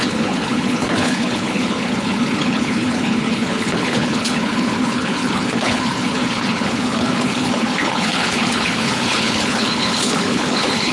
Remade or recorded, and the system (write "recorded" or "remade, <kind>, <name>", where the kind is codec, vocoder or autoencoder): remade, codec, HILCodec